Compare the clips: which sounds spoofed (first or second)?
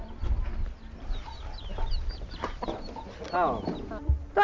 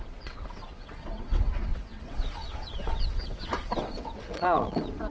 second